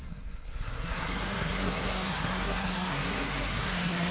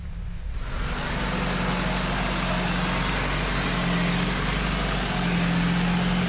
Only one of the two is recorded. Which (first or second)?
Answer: second